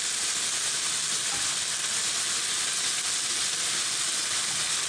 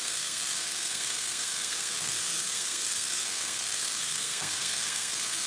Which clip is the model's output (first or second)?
second